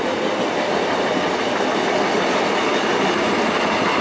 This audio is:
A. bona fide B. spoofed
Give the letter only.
A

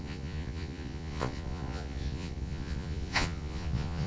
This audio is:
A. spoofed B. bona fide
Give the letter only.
A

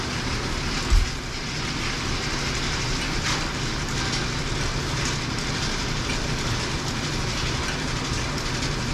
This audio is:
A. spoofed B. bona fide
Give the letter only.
B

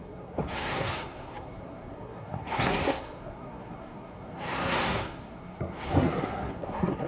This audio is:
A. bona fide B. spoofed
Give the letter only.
B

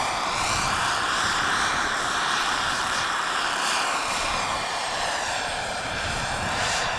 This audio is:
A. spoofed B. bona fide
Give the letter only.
A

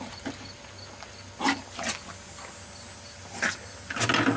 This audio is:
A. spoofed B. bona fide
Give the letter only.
B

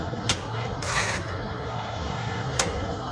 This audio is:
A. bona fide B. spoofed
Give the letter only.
B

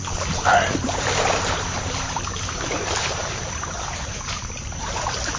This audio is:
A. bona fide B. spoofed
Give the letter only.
B